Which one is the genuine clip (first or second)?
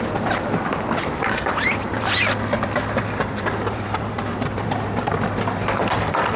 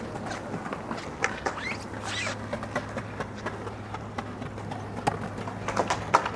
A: second